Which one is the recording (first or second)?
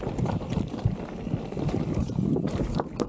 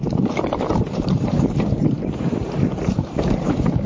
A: first